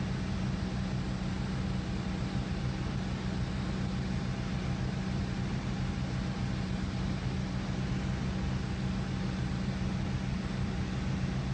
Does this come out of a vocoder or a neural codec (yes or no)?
no